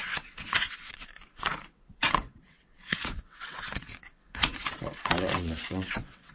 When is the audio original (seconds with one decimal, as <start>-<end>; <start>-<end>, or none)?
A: none